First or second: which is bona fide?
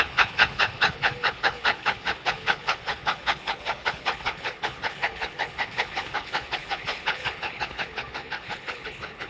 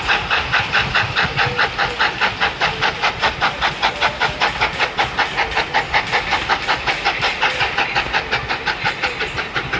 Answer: second